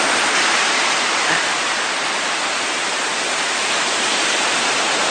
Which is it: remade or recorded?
remade